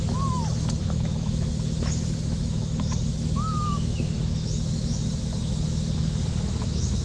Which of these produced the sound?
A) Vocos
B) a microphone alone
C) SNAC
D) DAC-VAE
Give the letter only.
D